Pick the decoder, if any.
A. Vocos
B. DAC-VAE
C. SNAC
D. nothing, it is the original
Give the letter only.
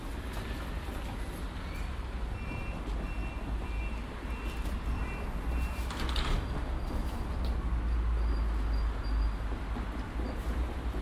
D